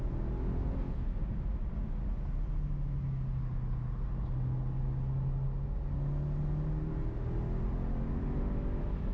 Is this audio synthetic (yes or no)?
no